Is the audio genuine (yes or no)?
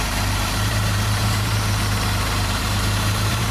no